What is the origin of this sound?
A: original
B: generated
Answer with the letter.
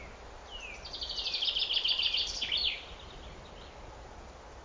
A